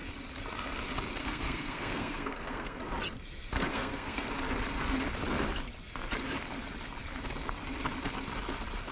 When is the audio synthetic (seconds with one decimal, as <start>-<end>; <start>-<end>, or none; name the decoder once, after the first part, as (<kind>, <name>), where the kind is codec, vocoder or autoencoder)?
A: 1.2-2.8 (codec, SNAC); 3.7-4.3